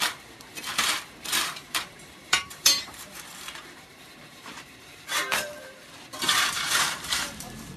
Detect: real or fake fake